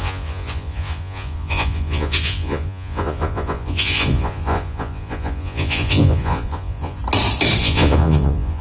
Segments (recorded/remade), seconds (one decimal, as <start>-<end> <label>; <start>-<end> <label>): 0.0-7.0 remade; 7.0-7.6 recorded; 7.6-8.6 remade